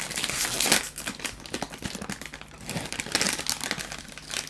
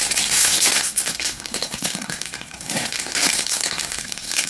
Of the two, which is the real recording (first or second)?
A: first